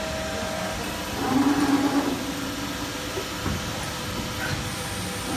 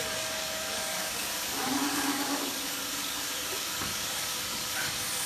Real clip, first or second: first